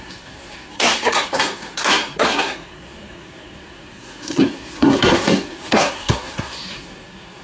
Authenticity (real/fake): fake